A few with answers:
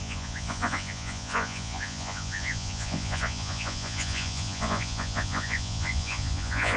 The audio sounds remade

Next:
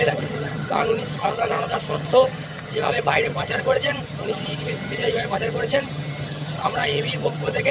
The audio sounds remade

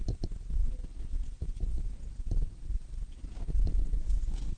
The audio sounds recorded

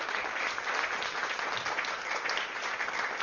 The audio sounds recorded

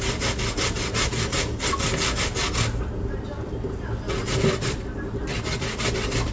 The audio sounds recorded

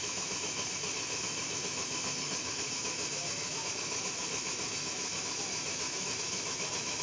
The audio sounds remade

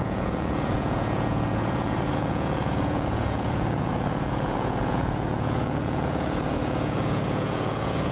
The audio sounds remade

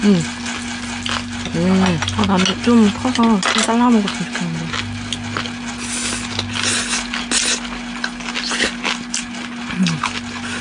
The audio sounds recorded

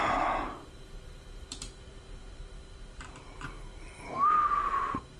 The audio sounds remade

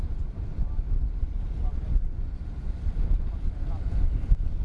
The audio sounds recorded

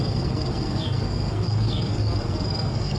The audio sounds remade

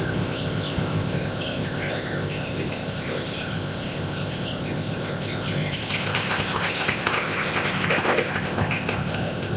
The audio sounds remade